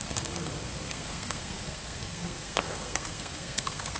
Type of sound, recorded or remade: remade